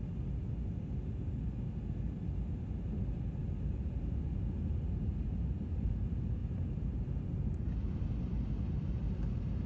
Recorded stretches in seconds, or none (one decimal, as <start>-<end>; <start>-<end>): 0.0-9.7